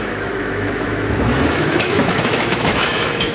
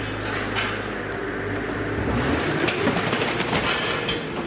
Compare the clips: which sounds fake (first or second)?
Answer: first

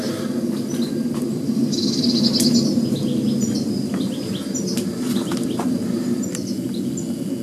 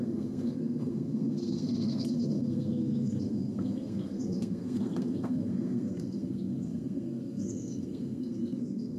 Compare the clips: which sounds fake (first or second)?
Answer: second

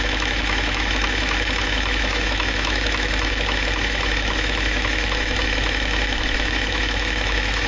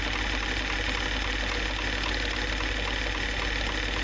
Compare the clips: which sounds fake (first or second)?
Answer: first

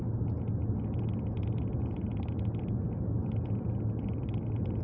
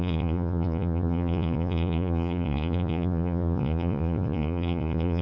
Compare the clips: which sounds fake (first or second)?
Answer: second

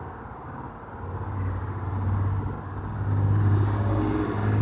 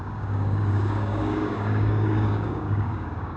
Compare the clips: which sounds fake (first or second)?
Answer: second